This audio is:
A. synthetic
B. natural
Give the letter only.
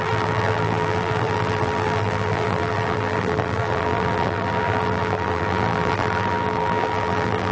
A